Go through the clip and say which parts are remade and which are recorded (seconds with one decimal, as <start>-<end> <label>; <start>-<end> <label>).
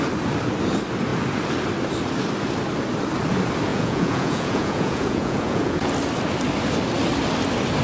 0.0-3.7 recorded; 3.7-5.9 remade; 5.9-7.8 recorded